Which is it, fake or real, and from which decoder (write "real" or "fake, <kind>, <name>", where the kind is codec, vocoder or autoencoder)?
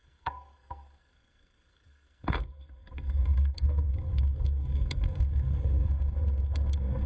fake, codec, SNAC